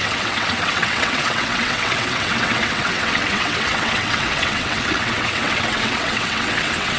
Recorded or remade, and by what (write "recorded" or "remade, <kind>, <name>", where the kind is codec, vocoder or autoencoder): remade, vocoder, WaveNeXt